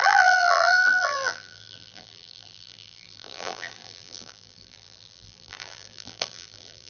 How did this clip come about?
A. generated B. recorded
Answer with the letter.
A